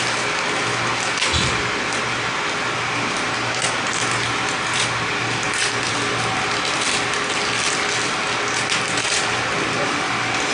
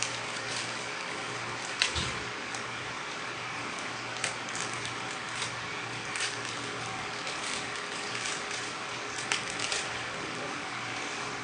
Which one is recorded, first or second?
first